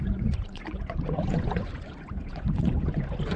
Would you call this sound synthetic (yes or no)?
yes